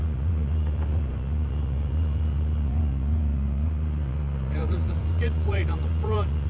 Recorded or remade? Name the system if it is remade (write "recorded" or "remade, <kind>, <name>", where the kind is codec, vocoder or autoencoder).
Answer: remade, vocoder, Vocos